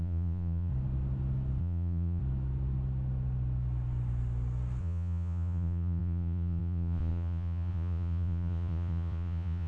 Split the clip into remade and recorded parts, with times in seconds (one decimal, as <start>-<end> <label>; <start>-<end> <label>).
0.0-0.7 remade; 0.7-1.6 recorded; 1.6-2.2 remade; 2.2-4.8 recorded; 4.8-9.7 remade